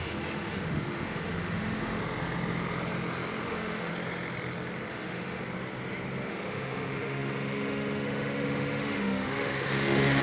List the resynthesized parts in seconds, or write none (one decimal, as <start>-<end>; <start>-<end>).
0.0-2.0; 3.5-3.9; 4.9-5.4; 6.3-10.2